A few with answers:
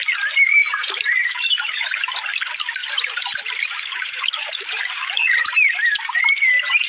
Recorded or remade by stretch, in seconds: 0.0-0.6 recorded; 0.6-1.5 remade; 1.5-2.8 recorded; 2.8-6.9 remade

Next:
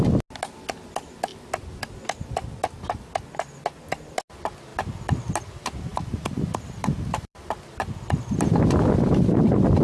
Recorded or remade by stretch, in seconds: 0.0-5.9 recorded; 5.9-8.5 remade; 8.5-9.8 recorded

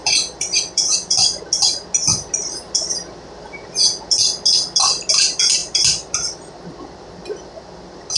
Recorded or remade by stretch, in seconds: 0.0-1.4 remade; 1.4-8.2 recorded

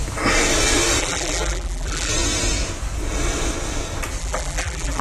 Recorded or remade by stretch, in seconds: 0.0-1.0 recorded; 1.0-2.1 remade; 2.1-4.2 recorded; 4.2-5.0 remade

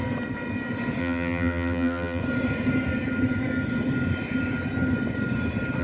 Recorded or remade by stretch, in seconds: 0.0-1.0 recorded; 1.0-2.2 remade; 2.2-5.8 recorded

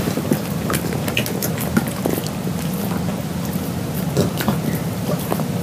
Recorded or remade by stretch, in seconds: 0.0-5.6 recorded

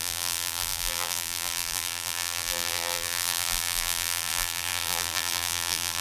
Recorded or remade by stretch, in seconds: 0.0-6.0 remade

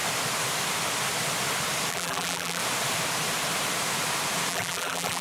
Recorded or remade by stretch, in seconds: 0.0-1.9 recorded; 1.9-2.6 remade; 2.6-4.5 recorded; 4.5-5.2 remade